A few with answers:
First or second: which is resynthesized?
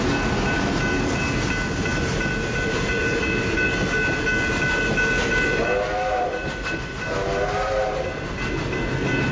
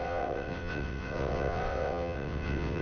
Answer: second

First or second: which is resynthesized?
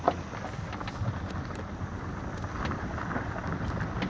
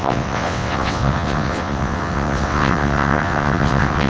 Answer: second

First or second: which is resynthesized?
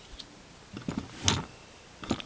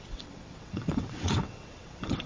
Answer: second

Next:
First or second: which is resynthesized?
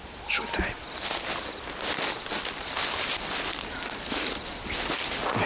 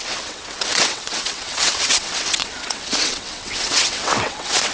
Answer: second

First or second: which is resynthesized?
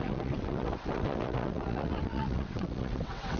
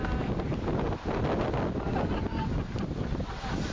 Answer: first